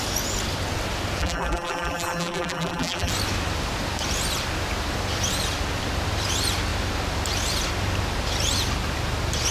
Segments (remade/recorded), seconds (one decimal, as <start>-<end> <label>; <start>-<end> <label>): 0.0-1.2 recorded; 1.2-3.1 remade; 3.1-9.5 recorded